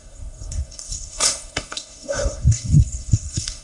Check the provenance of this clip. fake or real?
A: fake